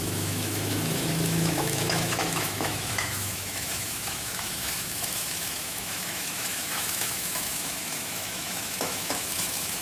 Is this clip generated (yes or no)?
yes